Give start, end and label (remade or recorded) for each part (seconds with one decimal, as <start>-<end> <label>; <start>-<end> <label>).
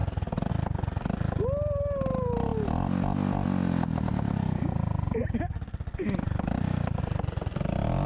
0.0-8.1 recorded